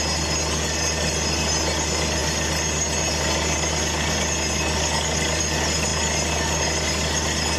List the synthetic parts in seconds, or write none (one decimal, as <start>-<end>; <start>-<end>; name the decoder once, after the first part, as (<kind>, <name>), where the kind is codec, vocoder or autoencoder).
none